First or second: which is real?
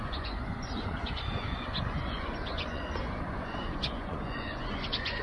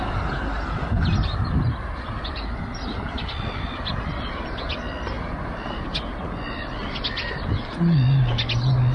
second